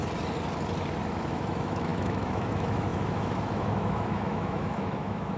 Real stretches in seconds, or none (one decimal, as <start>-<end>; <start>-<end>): 0.0-1.1